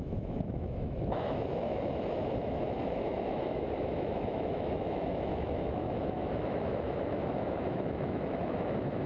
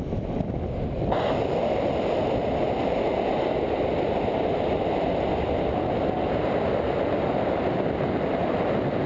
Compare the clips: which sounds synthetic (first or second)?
first